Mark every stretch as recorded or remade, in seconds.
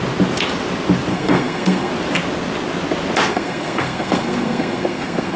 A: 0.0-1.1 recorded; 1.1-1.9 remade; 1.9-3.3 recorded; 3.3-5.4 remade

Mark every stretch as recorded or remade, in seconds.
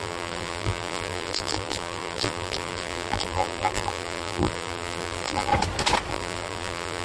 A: 0.0-5.5 remade; 5.5-6.1 recorded; 6.1-7.0 remade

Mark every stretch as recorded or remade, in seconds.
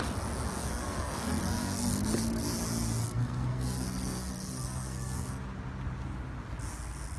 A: 0.0-0.6 recorded; 0.6-1.9 remade; 1.9-3.0 recorded; 3.0-5.4 remade; 5.4-7.2 recorded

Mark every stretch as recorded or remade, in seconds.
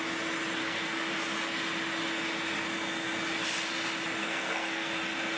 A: 0.0-0.6 recorded; 0.6-1.1 remade; 1.1-4.2 recorded; 4.2-4.9 remade; 4.9-5.4 recorded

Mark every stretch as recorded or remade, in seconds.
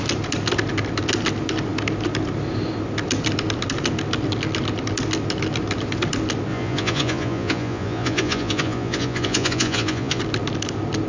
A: 0.0-6.5 recorded; 6.5-10.2 remade; 10.2-11.1 recorded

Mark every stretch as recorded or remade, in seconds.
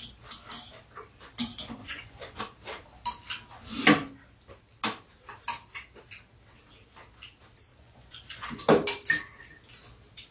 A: 0.0-1.8 recorded; 1.8-2.4 remade; 2.4-7.7 recorded; 7.7-8.6 remade; 8.6-10.3 recorded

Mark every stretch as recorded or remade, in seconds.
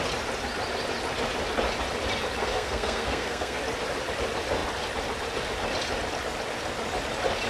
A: 0.0-2.4 recorded; 2.4-3.6 remade; 3.6-7.5 recorded